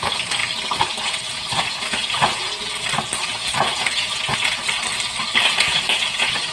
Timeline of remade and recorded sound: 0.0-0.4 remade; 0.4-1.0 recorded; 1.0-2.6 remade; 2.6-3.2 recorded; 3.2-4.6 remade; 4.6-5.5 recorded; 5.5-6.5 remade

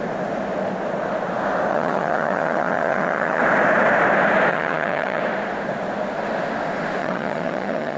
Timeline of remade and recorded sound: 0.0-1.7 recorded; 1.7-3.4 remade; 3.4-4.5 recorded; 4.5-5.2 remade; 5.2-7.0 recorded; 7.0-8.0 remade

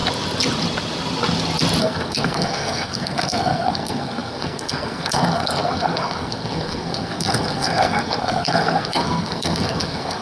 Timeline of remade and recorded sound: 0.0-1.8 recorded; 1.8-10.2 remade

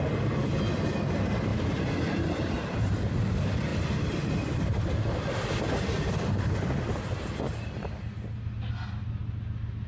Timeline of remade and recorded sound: 0.0-9.9 recorded